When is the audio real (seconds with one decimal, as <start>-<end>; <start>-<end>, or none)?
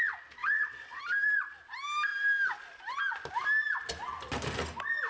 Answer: 0.0-0.4; 1.0-5.1